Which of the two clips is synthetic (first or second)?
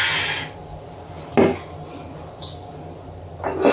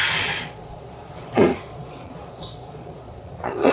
second